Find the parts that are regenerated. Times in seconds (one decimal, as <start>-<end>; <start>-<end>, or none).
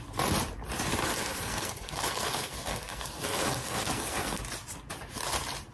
1.0-4.4